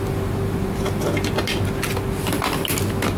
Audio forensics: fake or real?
real